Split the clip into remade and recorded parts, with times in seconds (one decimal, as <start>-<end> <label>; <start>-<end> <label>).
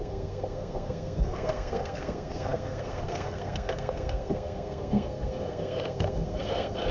0.0-6.9 remade